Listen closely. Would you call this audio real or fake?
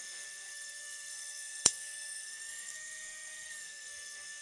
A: fake